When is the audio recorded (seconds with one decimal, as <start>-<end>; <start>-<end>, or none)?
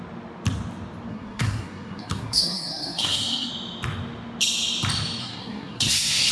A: 0.0-1.1; 3.5-5.2